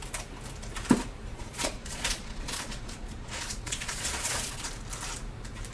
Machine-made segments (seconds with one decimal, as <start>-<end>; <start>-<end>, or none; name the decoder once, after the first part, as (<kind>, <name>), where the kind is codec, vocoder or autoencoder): 1.3-4.7 (vocoder, Vocos)

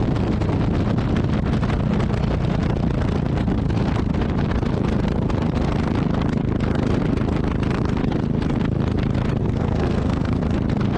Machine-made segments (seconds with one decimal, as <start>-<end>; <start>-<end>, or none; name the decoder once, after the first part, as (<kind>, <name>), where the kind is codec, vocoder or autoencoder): 9.4-10.4 (codec, SNAC)

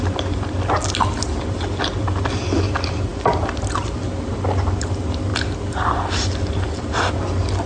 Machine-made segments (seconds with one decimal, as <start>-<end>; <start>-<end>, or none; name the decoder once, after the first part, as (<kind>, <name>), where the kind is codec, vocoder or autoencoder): none

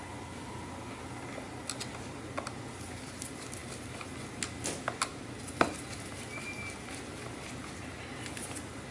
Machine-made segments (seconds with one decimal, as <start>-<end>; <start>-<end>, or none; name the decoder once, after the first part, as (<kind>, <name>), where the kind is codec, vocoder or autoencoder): none

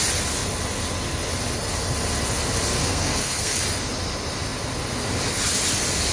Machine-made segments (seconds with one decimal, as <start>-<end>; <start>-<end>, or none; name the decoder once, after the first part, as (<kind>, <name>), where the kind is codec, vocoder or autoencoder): 2.7-3.6 (codec, SNAC)

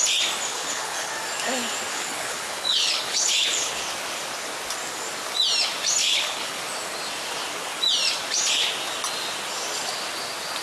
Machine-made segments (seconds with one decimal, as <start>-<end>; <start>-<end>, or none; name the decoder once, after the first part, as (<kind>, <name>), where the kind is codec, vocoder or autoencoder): 0.5-1.1 (codec, HILCodec); 1.9-3.8; 6.0-6.6

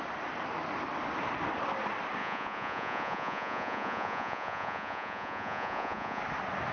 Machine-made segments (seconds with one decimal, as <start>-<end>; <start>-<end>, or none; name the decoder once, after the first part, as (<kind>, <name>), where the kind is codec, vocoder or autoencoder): 2.2-6.2 (vocoder, Vocos)